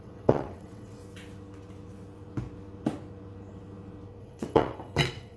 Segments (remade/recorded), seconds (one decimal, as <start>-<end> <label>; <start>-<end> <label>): 0.0-1.0 remade; 1.0-4.2 recorded; 4.2-5.4 remade